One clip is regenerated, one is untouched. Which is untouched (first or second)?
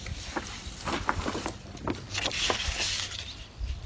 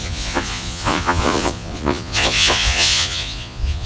first